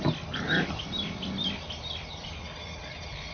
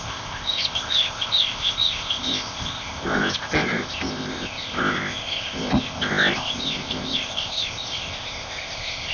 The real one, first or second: first